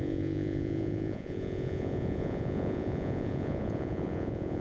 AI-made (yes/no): yes